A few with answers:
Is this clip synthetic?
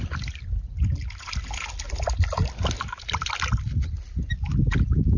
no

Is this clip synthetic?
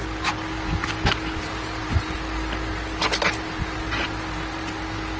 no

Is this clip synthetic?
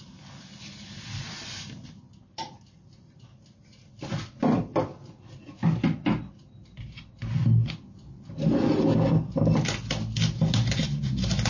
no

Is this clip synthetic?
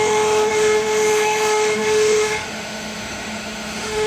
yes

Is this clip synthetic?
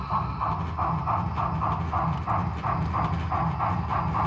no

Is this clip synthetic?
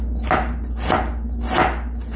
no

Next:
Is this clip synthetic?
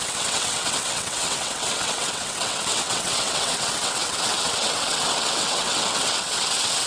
yes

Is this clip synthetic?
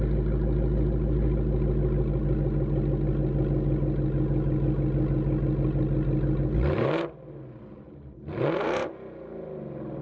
no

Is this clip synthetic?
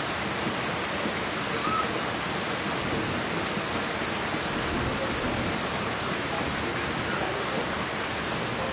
no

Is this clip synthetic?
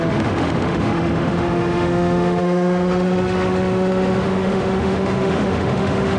yes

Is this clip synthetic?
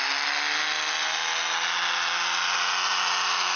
no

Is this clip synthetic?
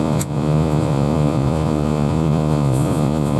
yes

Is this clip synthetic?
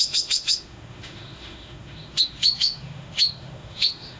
yes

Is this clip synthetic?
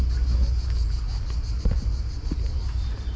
no